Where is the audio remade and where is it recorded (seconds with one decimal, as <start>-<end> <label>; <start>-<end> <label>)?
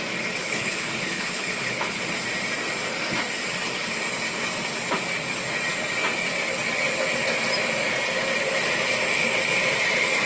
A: 0.0-0.4 recorded; 0.4-2.0 remade; 2.0-10.3 recorded